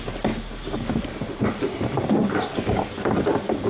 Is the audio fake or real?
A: real